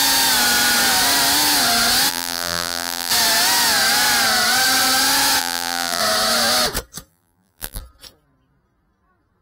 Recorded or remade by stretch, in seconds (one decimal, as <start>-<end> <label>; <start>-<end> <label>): 0.0-2.1 recorded; 2.1-3.1 remade; 3.1-5.4 recorded; 5.4-6.0 remade; 6.0-7.1 recorded; 7.1-7.8 remade; 7.8-9.4 recorded